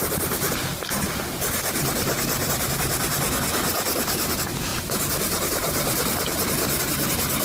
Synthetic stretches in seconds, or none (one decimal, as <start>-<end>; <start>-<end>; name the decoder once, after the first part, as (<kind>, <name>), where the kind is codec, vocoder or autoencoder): 4.7-6.8 (vocoder, BigVGAN v2)